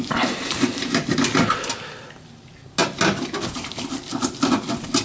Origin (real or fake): real